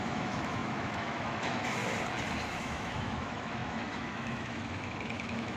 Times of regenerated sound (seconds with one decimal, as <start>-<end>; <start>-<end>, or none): 0.0-1.8; 2.5-5.6